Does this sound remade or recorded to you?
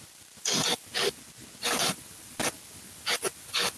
recorded